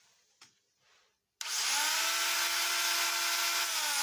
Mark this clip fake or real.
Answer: real